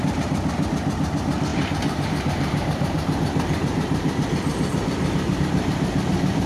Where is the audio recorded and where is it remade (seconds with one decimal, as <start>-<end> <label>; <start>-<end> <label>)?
0.0-1.5 recorded; 1.5-5.4 remade; 5.4-6.5 recorded